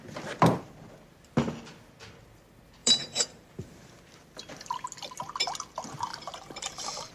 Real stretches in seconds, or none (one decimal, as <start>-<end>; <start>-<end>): 0.0-2.8; 4.1-6.1